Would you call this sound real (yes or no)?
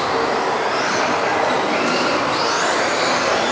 yes